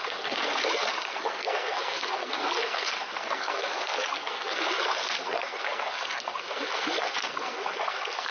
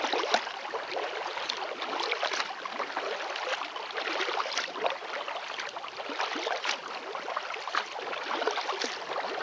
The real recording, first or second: second